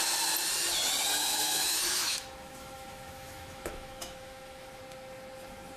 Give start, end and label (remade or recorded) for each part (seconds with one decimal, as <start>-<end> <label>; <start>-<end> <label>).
0.0-1.3 recorded; 1.3-4.8 remade; 4.8-5.8 recorded